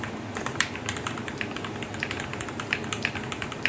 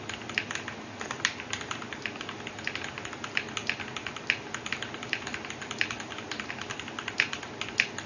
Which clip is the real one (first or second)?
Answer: second